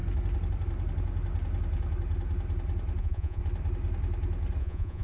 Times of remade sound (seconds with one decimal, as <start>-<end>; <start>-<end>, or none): 3.0-3.4; 4.6-5.0